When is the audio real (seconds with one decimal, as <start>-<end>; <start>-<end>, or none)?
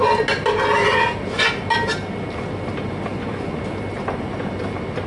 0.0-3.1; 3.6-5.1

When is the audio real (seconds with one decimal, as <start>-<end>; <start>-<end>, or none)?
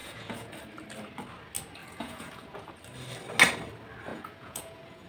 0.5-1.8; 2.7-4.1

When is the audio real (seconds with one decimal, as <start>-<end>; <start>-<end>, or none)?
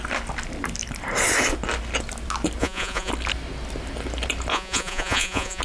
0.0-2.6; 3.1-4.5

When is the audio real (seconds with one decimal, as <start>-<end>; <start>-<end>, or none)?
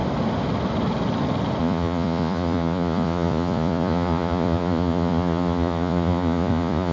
0.0-1.6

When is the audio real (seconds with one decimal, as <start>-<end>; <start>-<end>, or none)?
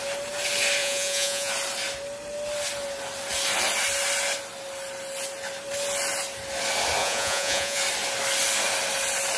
0.0-0.8; 1.5-7.0; 7.8-9.4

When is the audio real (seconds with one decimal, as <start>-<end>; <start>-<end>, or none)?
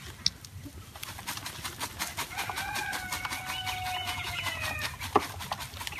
0.0-4.0; 4.6-6.0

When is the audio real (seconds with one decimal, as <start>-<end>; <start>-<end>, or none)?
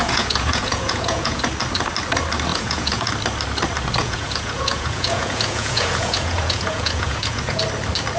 1.4-2.5; 3.1-4.0; 7.6-8.2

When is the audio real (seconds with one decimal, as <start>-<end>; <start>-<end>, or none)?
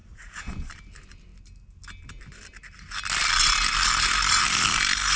0.5-5.2